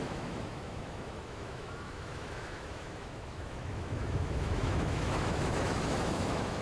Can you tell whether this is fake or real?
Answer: fake